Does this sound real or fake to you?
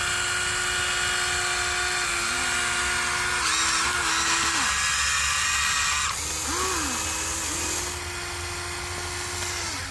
real